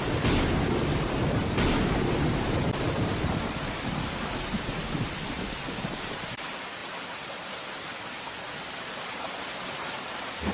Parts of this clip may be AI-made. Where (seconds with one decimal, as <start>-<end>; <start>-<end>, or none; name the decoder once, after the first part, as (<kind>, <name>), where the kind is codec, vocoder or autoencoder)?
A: none